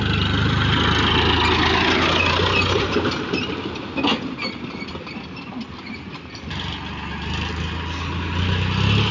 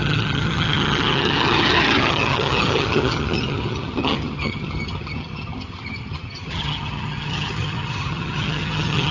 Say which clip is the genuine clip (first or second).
first